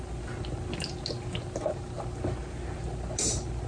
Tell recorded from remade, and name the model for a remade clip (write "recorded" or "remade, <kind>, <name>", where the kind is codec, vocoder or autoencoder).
recorded